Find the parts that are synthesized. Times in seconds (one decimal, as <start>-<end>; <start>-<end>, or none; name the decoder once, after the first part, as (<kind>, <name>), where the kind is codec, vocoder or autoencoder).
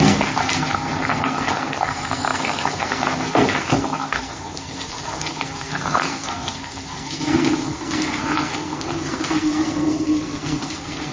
0.0-11.1 (codec, SNAC)